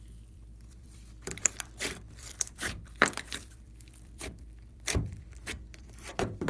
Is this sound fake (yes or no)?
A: yes